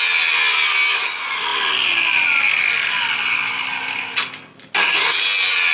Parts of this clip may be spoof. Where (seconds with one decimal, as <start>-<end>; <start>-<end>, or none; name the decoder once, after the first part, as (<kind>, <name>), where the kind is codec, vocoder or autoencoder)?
none